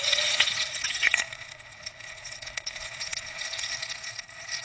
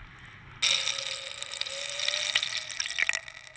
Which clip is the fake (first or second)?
first